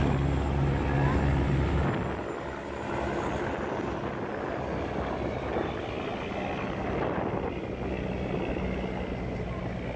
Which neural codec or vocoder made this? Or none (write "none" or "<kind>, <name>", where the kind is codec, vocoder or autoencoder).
none